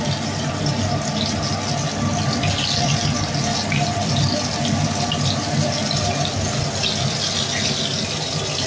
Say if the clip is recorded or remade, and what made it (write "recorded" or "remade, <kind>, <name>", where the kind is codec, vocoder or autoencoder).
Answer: recorded